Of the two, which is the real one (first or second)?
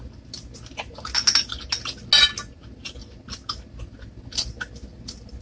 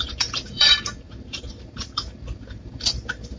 first